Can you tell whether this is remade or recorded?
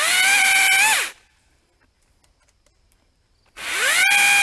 recorded